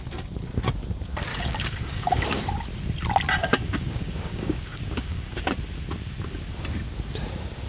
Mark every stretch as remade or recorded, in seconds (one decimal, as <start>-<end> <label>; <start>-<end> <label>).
0.0-1.3 recorded; 1.3-2.4 remade; 2.4-3.4 recorded; 3.4-5.5 remade; 5.5-7.7 recorded

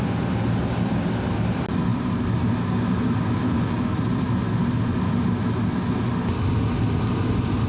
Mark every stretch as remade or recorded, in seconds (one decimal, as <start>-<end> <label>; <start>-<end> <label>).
0.0-7.7 recorded

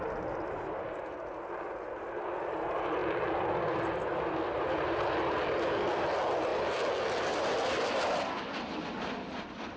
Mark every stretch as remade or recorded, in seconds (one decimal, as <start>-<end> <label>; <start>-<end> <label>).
0.0-9.8 recorded

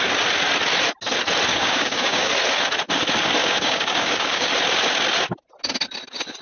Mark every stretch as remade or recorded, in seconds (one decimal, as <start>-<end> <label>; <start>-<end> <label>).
0.0-1.5 recorded; 1.5-2.3 remade; 2.3-3.4 recorded; 3.4-4.5 remade; 4.5-6.4 recorded

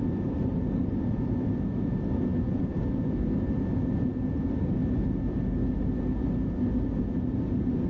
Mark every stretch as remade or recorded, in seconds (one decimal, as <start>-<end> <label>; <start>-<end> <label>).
0.0-7.9 recorded

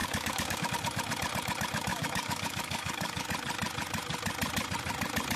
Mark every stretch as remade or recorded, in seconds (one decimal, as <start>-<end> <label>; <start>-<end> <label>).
0.0-0.7 remade; 0.7-1.9 recorded; 1.9-3.3 remade; 3.3-5.4 recorded

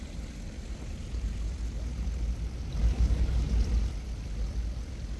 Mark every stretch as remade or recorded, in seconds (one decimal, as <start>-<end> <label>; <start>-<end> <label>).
0.0-2.8 recorded; 2.8-3.5 remade; 3.5-5.2 recorded